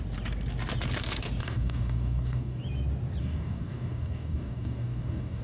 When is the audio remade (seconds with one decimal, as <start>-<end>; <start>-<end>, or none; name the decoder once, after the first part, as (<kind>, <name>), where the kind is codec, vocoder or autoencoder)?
1.4-2.6 (codec, DAC); 3.2-5.4